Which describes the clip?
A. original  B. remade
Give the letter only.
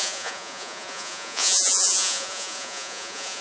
B